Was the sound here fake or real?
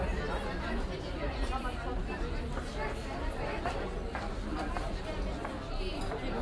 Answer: real